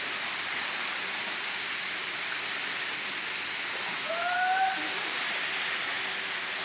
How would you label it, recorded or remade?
recorded